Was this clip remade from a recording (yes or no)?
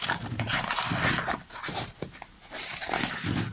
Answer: no